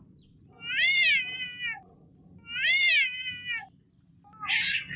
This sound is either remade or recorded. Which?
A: recorded